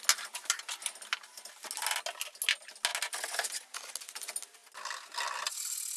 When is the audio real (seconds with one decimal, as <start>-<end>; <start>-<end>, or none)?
0.0-6.0